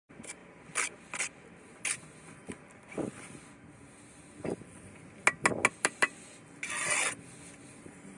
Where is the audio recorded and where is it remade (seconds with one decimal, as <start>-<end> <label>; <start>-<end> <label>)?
0.0-8.2 recorded